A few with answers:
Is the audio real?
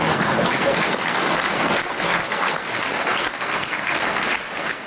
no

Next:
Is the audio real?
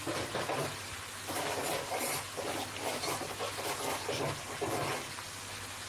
yes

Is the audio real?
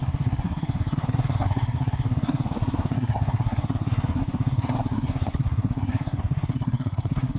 no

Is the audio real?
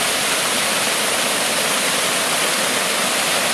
yes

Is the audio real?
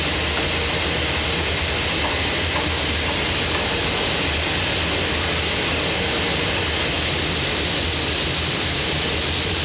yes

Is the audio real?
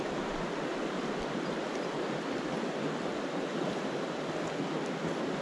yes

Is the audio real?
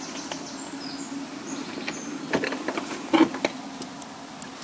yes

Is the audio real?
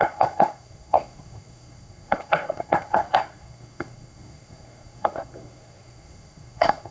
no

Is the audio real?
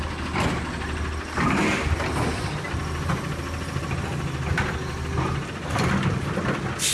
yes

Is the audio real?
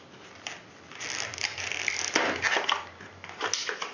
yes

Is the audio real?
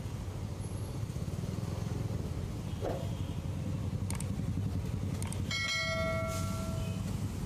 yes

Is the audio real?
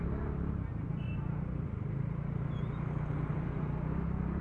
yes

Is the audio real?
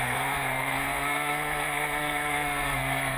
no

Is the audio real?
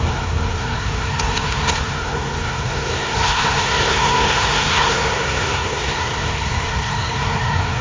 no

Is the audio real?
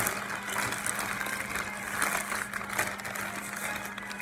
yes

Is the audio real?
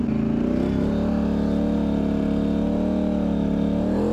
yes